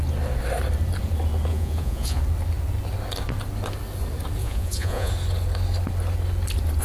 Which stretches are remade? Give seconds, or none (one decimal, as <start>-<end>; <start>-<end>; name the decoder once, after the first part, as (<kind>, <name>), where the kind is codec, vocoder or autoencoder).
1.5-2.2 (vocoder, Vocos); 4.4-5.1